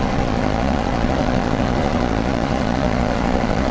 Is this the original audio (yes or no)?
no